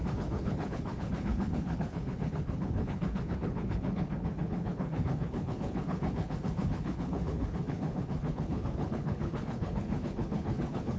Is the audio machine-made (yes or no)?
yes